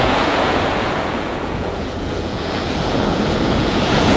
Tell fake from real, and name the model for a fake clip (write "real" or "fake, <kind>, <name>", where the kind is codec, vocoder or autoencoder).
fake, vocoder, Vocos